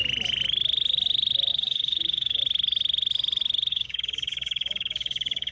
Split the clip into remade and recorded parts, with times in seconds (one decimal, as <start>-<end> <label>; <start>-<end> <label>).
0.0-1.5 recorded; 1.5-2.4 remade; 2.4-3.7 recorded; 3.7-5.5 remade